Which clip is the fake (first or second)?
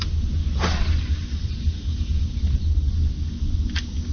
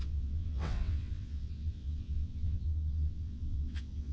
second